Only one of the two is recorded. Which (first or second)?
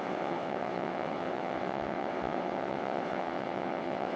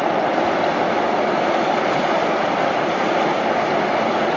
second